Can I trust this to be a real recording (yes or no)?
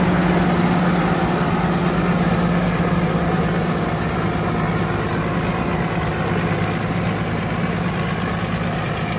yes